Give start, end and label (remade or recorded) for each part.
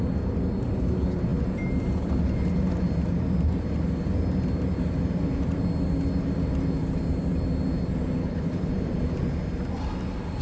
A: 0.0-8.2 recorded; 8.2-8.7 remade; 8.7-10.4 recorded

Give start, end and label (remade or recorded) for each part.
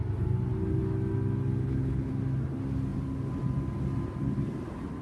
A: 0.0-1.6 recorded; 1.6-2.1 remade; 2.1-5.0 recorded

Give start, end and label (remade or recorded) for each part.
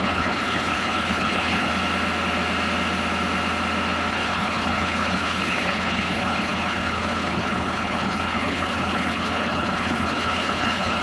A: 0.0-1.7 remade; 1.7-4.1 recorded; 4.1-11.0 remade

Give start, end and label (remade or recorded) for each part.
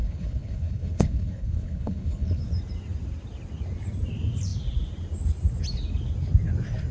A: 0.0-2.4 remade; 2.4-6.9 recorded